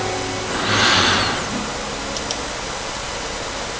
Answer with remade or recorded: recorded